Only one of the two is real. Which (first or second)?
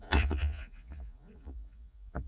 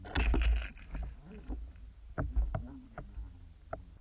second